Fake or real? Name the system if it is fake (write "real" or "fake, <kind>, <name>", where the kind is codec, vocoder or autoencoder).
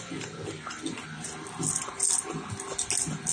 real